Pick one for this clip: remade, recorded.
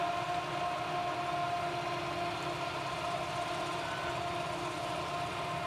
recorded